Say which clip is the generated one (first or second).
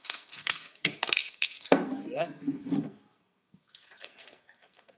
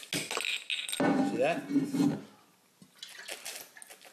first